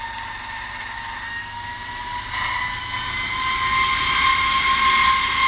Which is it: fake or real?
real